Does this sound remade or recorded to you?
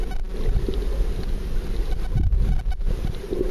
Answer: recorded